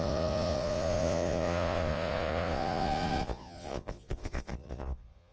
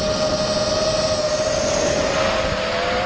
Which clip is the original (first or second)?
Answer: second